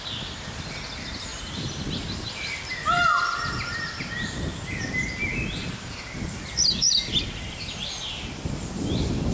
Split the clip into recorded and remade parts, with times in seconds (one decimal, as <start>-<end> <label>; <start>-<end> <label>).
0.0-9.3 recorded